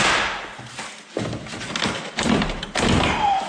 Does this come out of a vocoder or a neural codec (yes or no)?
no